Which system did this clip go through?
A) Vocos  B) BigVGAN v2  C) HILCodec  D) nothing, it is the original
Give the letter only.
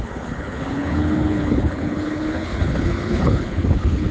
C